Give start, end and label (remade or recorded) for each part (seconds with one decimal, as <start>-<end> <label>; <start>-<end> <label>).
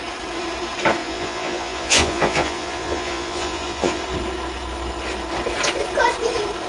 0.0-1.0 recorded; 1.0-4.0 remade; 4.0-6.7 recorded